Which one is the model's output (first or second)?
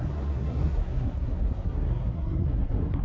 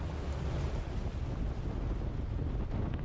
first